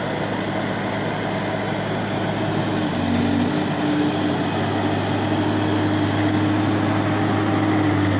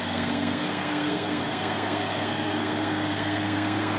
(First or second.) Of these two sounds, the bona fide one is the first